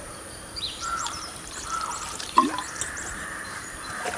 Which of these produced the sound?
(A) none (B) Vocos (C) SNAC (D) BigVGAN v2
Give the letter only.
D